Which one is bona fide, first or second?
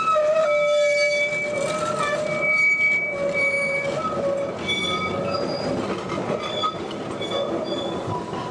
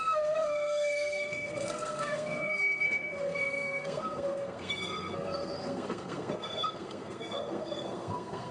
first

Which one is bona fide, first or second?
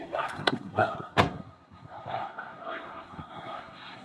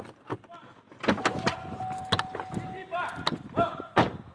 second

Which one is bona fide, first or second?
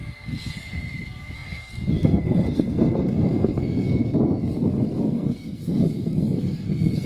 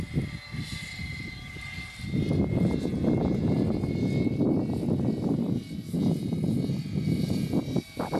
second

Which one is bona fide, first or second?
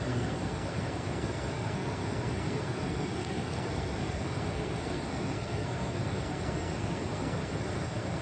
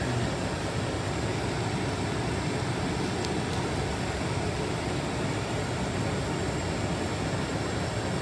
second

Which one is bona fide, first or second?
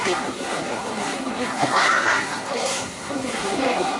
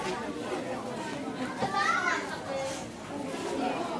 second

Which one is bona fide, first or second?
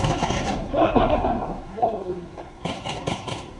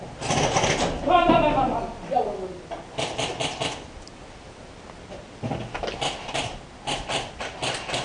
second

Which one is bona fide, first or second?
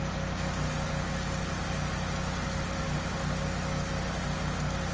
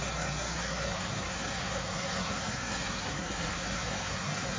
first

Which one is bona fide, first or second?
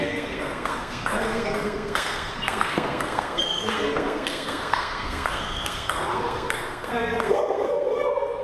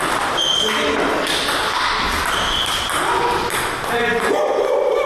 second